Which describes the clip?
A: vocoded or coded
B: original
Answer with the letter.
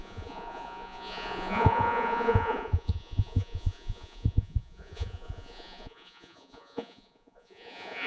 A